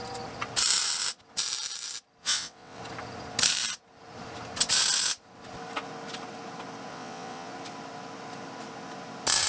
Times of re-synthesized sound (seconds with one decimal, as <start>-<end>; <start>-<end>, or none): 2.2-2.8; 6.9-7.5